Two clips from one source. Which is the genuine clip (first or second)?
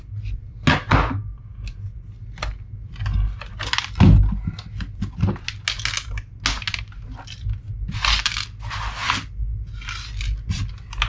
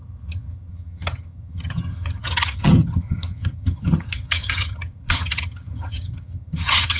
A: first